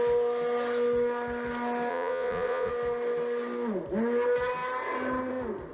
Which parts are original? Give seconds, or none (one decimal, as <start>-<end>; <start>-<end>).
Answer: 0.0-1.9; 2.7-5.7